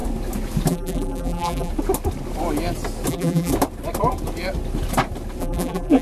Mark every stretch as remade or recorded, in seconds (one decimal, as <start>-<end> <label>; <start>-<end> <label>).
0.0-0.7 recorded; 0.7-1.7 remade; 1.7-3.1 recorded; 3.1-3.5 remade; 3.5-5.4 recorded; 5.4-6.0 remade